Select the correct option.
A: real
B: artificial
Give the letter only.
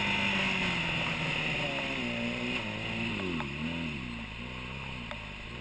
A